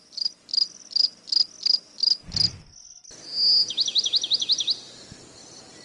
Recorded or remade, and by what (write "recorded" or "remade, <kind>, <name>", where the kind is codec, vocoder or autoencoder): recorded